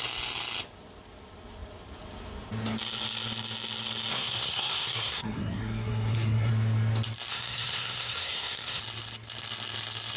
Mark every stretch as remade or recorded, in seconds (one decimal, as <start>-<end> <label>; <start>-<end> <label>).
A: 0.0-4.1 recorded; 4.1-6.5 remade; 6.5-7.3 recorded; 7.3-8.8 remade; 8.8-10.2 recorded